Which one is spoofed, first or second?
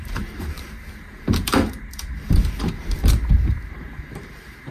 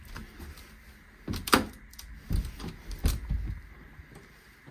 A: first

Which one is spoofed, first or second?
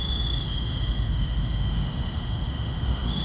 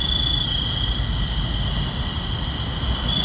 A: first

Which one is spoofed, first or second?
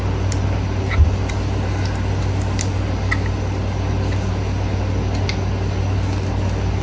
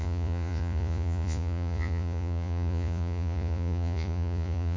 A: second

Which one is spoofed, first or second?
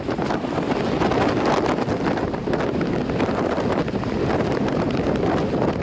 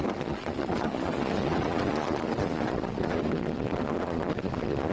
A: second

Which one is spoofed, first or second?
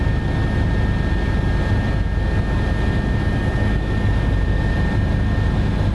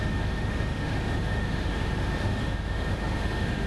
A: second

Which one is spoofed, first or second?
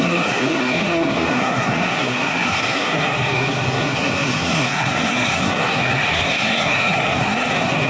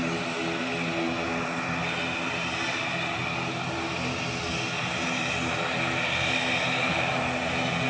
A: first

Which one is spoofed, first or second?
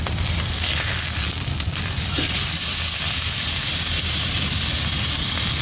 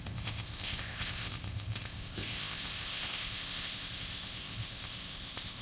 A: second